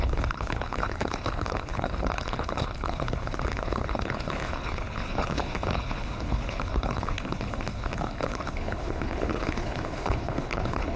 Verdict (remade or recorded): remade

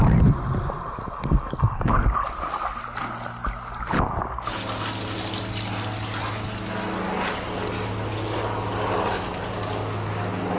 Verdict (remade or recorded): recorded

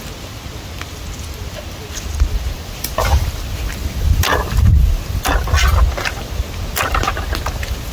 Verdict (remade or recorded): recorded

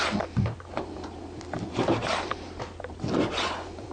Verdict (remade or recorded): recorded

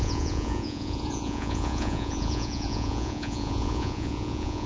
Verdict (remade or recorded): remade